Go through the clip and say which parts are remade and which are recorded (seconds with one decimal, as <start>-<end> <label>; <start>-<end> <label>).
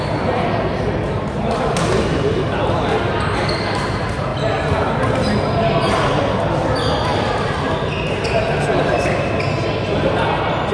0.0-2.1 recorded; 2.1-3.4 remade; 3.4-10.7 recorded